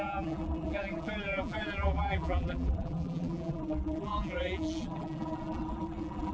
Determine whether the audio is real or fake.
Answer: fake